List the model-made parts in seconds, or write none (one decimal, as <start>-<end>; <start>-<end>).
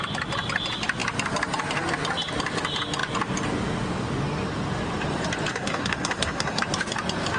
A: 5.5-6.6